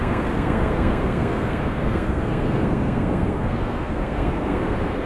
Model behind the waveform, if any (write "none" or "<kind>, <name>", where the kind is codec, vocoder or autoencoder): codec, SNAC